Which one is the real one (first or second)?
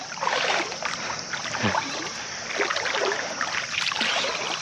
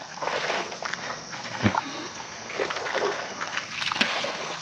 first